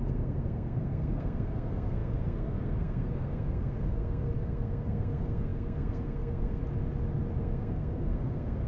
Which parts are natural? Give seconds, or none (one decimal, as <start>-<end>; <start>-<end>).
6.6-7.4